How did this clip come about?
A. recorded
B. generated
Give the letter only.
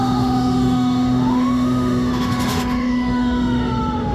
B